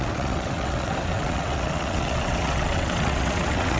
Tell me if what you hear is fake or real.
fake